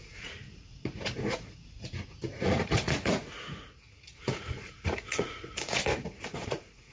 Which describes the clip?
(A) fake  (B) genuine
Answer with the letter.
A